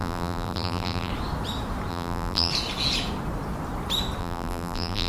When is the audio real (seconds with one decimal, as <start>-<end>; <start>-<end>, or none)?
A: 1.1-1.9; 2.5-4.2